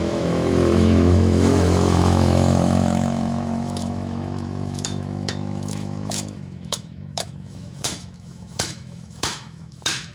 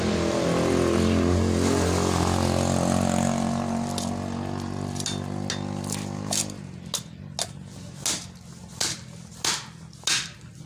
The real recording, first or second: second